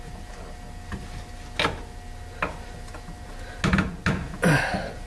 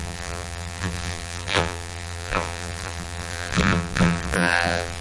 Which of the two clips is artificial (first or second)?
second